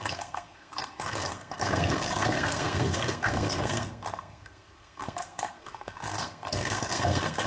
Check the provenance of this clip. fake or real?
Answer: fake